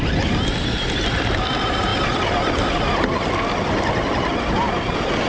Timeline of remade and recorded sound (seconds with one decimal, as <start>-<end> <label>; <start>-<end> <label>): 0.0-5.3 recorded